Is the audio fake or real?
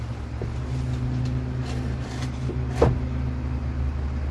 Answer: real